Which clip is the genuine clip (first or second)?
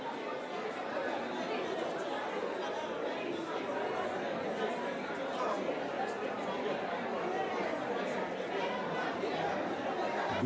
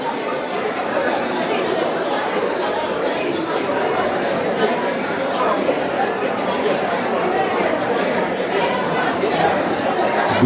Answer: first